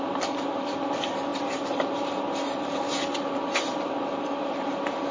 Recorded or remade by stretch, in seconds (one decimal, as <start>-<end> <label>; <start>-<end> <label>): 0.0-5.1 remade